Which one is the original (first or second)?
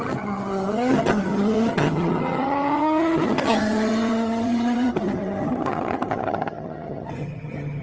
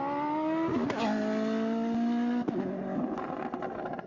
second